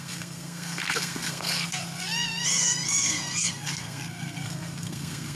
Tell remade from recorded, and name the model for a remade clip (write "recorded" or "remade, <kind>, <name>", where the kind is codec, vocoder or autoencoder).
remade, codec, SNAC